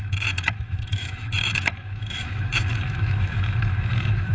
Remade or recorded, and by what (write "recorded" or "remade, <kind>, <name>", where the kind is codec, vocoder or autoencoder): remade, autoencoder, DAC-VAE